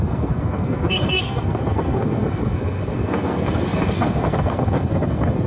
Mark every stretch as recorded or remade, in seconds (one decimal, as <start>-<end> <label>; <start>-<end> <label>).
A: 0.0-5.5 remade